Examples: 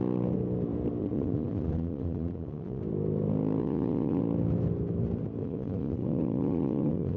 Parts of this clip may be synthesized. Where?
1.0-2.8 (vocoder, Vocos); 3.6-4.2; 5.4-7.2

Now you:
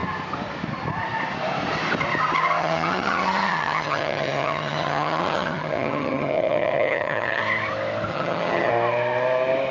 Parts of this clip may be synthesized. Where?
2.6-7.4 (vocoder, HiFi-GAN); 8.1-8.7

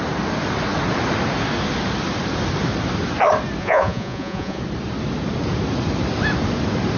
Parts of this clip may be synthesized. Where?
3.6-4.6 (vocoder, Vocos)

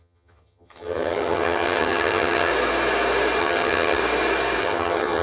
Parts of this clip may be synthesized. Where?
0.0-2.5 (vocoder, HiFi-GAN); 3.4-4.0; 4.6-5.2

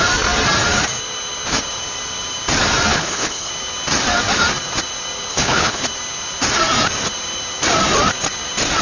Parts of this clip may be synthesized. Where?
2.9-3.5 (codec, HILCodec); 5.3-5.8

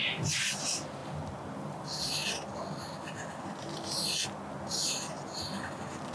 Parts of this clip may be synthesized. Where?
none

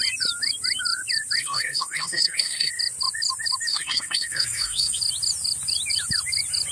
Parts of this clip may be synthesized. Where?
1.4-2.7 (codec, SNAC); 3.7-5.0